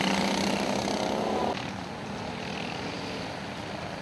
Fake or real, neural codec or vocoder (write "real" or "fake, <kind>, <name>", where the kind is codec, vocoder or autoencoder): real